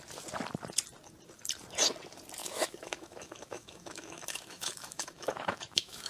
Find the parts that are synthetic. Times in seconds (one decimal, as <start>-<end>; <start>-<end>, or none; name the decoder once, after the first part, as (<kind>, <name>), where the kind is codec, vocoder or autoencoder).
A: 2.4-6.1 (autoencoder, DAC-VAE)

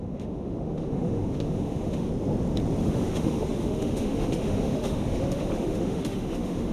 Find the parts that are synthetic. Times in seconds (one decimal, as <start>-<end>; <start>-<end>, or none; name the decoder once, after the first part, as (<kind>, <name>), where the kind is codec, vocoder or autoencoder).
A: 0.0-2.1 (autoencoder, DAC-VAE); 2.8-6.7

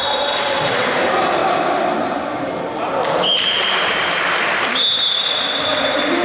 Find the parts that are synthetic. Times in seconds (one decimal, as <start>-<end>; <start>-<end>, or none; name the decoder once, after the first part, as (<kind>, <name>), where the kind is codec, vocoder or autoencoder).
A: none

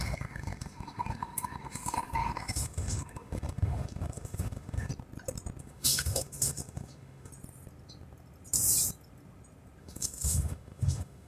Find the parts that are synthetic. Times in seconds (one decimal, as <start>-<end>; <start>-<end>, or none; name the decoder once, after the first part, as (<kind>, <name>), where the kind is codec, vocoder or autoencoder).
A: 0.0-4.9 (autoencoder, DAC-VAE); 5.6-7.3; 9.8-11.3

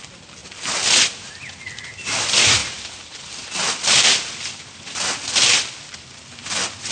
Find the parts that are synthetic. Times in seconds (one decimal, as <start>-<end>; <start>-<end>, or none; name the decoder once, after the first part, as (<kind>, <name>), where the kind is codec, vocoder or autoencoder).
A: none

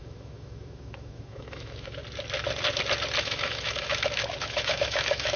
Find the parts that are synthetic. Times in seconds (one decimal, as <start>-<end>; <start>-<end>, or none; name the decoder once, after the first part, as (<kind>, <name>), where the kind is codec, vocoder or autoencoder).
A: 0.0-2.0 (autoencoder, DAC-VAE); 3.2-5.4